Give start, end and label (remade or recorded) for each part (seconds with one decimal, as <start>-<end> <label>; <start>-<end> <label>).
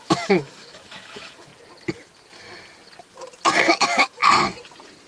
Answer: 0.0-1.5 remade; 1.5-3.8 recorded; 3.8-4.2 remade; 4.2-5.1 recorded